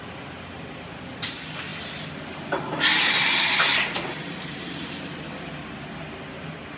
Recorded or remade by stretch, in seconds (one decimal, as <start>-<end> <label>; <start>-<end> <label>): 0.0-6.8 recorded